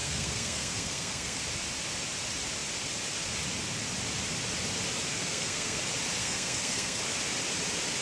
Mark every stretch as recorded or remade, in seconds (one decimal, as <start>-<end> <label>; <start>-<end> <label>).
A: 0.0-1.4 remade; 1.4-5.1 recorded; 5.1-5.8 remade; 5.8-6.2 recorded; 6.2-7.0 remade; 7.0-8.0 recorded